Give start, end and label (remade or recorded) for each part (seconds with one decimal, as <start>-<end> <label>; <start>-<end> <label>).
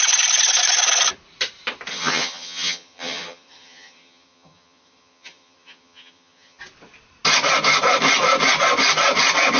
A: 0.0-1.9 recorded; 1.9-6.6 remade; 6.6-9.6 recorded